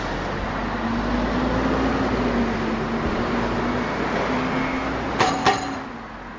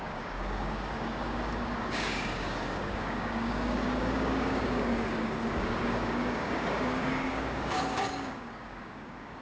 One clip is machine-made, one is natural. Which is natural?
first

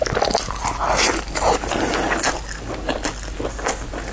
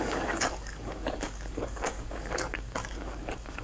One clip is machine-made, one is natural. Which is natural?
first